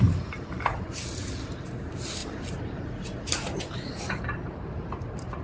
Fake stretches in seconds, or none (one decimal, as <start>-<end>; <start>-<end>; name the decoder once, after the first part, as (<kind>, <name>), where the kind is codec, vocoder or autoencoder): 2.2-2.8 (vocoder, BigVGAN v2)